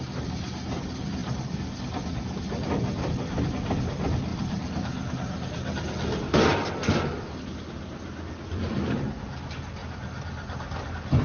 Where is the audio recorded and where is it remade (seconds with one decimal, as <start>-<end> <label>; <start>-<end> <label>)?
0.0-11.2 recorded